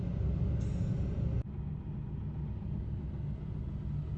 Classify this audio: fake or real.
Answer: real